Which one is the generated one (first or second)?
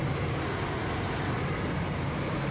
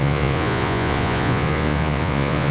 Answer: second